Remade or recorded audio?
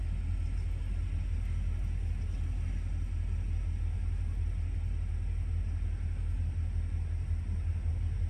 recorded